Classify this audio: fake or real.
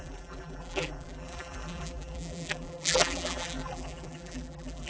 fake